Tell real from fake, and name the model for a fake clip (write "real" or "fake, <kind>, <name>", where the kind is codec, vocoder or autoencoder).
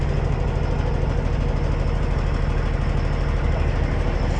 real